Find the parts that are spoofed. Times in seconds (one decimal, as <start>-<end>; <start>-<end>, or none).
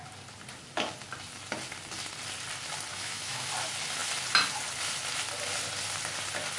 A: 2.9-3.5